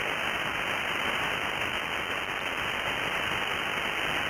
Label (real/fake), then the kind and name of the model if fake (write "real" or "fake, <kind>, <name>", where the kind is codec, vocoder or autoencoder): real